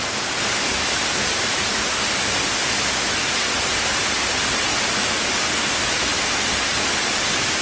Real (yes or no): yes